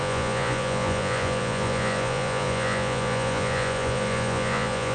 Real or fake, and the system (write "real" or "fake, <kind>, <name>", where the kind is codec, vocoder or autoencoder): fake, vocoder, Vocos